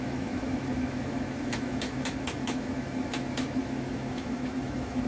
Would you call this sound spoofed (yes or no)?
yes